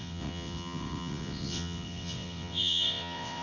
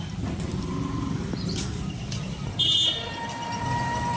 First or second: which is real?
second